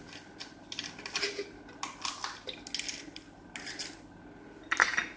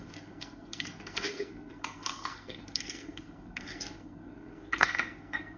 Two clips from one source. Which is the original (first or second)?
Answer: first